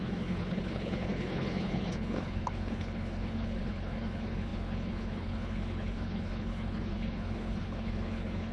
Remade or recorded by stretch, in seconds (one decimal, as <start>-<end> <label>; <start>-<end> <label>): 0.0-8.5 remade